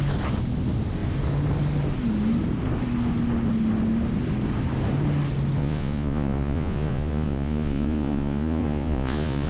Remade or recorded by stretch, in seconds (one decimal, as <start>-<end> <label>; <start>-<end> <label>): 0.0-5.6 recorded; 5.6-9.5 remade